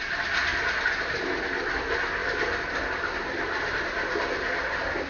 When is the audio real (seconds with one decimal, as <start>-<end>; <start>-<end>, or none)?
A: 0.0-5.1